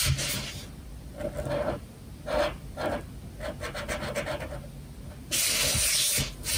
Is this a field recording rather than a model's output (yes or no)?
yes